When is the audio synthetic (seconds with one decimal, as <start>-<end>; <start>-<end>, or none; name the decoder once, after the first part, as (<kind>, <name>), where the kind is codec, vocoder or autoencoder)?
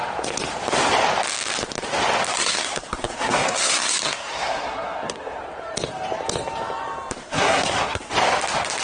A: 2.3-5.4 (codec, SNAC); 7.2-8.1